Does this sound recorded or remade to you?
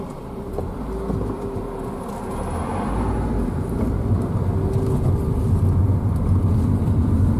recorded